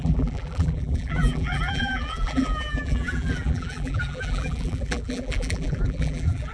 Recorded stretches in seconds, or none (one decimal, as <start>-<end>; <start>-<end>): none